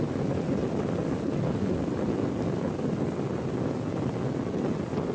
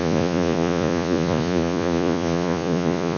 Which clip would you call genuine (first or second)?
first